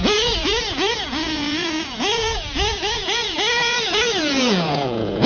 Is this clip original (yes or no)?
no